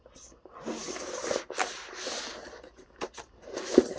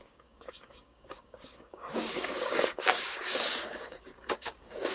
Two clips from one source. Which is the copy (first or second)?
second